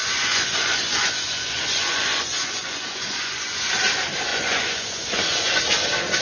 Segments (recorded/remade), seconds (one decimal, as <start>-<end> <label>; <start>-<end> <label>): 0.0-3.7 remade; 3.7-4.3 recorded; 4.3-5.6 remade; 5.6-6.2 recorded